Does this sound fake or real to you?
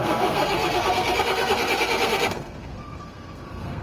fake